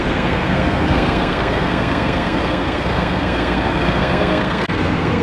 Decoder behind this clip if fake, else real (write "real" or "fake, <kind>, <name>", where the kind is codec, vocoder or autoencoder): fake, codec, SNAC